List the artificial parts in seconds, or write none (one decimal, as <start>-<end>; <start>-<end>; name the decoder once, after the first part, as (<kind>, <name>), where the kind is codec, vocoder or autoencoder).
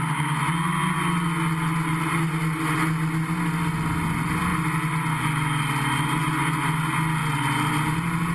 none